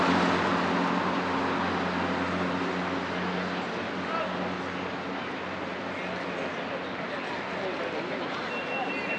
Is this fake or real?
real